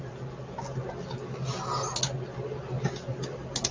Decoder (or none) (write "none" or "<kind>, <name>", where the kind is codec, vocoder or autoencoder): none